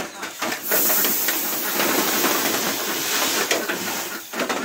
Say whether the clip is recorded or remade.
remade